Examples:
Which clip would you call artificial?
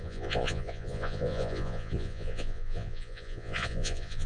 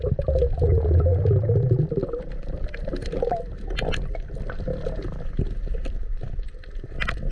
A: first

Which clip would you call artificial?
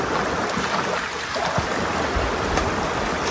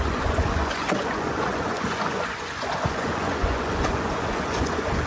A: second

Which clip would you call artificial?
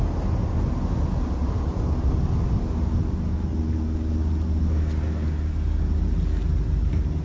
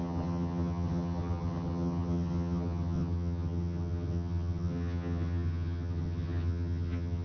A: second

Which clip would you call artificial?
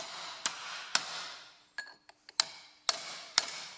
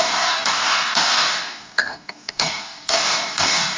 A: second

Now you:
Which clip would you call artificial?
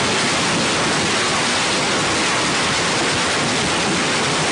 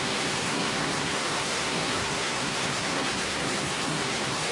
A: second